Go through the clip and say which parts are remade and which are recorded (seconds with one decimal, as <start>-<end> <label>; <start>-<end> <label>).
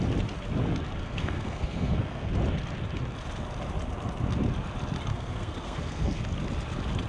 0.0-1.0 recorded; 1.0-2.3 remade; 2.3-5.1 recorded; 5.1-6.2 remade; 6.2-7.1 recorded